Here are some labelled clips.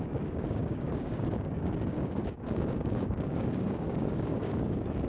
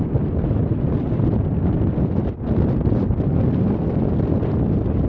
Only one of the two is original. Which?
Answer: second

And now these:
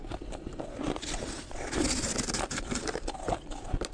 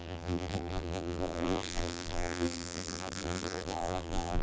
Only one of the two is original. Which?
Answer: first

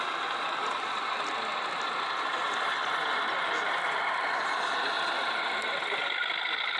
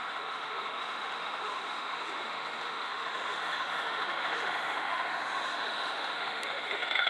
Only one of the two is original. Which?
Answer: first